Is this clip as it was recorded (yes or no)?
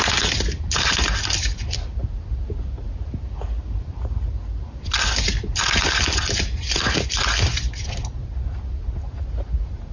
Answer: yes